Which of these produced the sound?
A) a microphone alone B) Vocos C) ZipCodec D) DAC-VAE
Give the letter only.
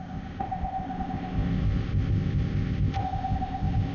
C